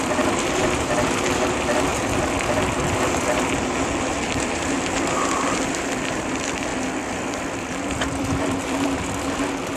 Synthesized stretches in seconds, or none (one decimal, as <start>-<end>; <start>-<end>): 0.0-1.9; 4.0-9.8